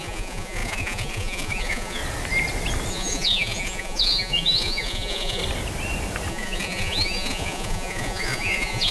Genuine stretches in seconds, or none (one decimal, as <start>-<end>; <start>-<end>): 2.0-2.9; 5.4-6.3